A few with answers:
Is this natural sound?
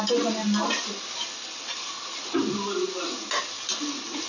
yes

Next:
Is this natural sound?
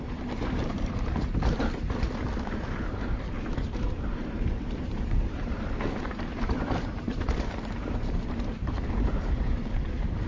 no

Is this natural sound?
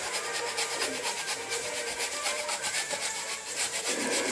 no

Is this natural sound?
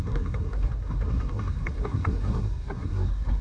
no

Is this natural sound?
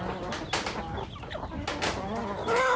yes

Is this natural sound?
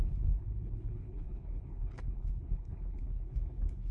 no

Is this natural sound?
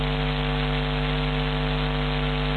yes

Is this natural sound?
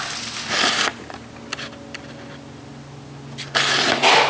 yes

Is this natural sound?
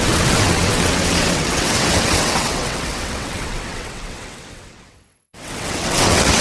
no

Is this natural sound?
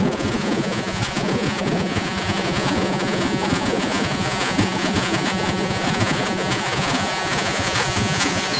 no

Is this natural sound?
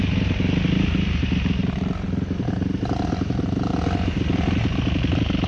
yes